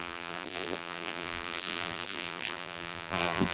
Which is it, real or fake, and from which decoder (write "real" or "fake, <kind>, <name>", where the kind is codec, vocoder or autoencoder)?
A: fake, vocoder, BigVGAN v2